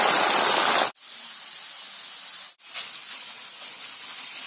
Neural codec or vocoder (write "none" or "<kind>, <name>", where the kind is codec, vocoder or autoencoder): none